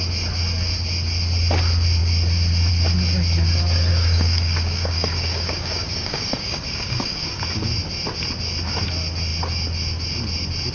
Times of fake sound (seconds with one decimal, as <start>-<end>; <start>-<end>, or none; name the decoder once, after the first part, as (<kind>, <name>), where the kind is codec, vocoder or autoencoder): 3.9-7.4 (codec, DAC)